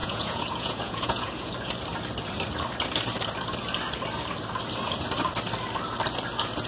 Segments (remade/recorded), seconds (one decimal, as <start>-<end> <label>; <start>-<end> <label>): 0.0-1.5 remade; 1.5-6.7 recorded